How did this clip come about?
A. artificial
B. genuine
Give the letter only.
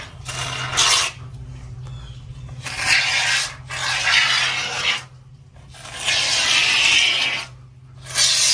B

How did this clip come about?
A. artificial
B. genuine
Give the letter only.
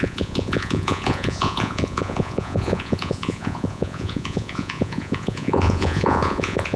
A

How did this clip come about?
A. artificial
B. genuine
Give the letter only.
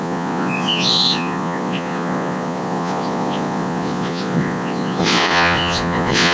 A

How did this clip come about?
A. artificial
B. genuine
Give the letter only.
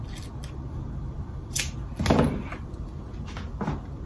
B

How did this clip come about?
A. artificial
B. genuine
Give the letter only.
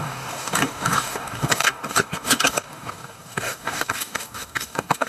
A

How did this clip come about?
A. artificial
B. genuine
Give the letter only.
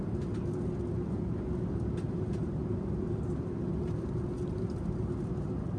B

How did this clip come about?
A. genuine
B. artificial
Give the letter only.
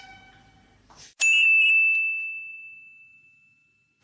A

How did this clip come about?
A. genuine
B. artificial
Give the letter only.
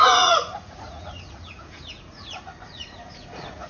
B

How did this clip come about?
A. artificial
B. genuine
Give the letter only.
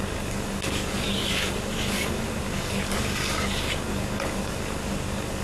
A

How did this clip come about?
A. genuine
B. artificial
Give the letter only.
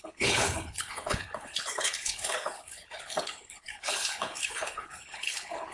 B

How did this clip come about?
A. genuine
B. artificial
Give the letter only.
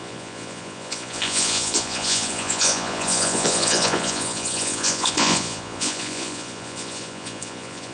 B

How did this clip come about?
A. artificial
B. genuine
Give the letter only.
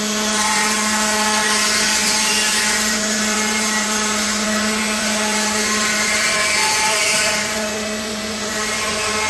A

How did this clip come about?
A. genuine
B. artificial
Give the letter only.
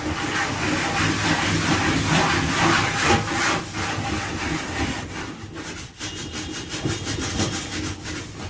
A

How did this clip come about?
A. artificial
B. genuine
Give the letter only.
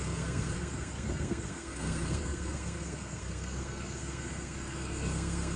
A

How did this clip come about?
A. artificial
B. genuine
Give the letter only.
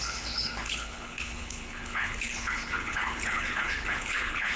A